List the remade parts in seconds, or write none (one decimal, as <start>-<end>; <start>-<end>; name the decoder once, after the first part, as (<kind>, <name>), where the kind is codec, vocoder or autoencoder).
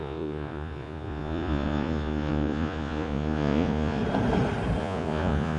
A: 0.0-4.0 (vocoder, Vocos); 4.8-5.6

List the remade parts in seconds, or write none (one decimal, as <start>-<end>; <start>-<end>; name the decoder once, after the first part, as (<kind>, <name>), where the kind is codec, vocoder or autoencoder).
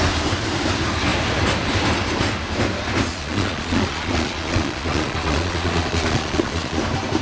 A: 3.1-6.8 (vocoder, Vocos)